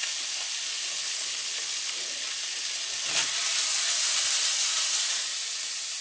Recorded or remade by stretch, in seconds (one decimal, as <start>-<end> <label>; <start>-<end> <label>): 0.0-0.9 recorded; 0.9-2.1 remade; 2.1-6.0 recorded